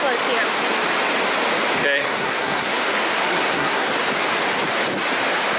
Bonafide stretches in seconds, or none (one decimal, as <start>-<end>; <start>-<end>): 0.0-2.0; 2.8-3.2; 3.9-5.6